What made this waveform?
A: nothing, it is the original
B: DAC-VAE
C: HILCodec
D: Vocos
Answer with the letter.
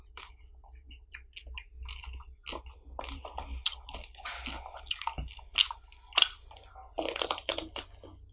A